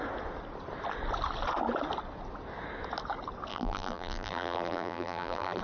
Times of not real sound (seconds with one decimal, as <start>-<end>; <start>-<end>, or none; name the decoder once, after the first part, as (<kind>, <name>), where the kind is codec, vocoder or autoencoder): 3.5-5.6 (vocoder, BigVGAN v2)